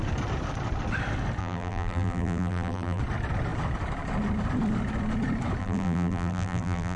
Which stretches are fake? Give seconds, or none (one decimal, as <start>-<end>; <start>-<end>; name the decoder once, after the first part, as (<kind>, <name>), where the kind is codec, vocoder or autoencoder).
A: 1.4-3.0 (vocoder, BigVGAN v2); 5.6-7.0